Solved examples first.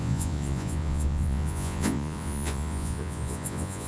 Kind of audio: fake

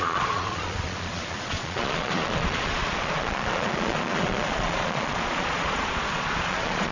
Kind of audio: fake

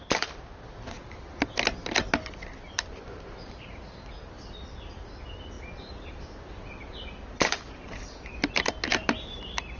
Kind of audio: real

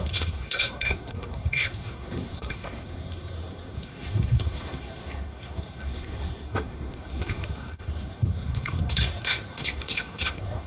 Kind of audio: fake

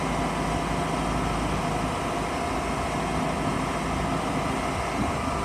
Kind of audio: real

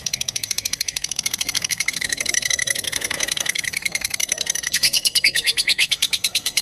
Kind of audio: fake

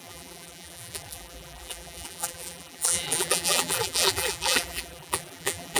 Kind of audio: fake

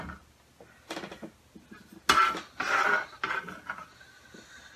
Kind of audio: real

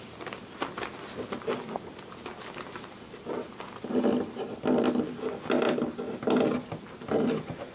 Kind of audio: real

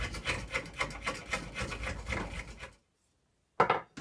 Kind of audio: real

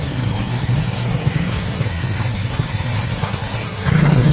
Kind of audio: fake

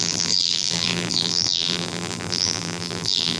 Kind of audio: fake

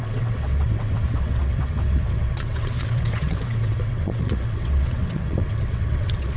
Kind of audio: fake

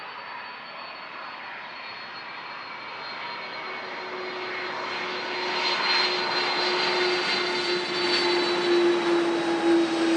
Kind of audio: real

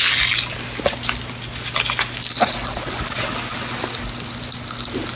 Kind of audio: real